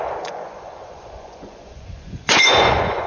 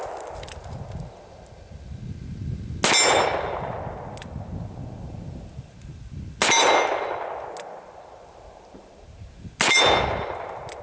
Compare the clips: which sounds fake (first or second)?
first